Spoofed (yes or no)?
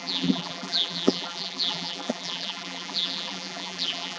yes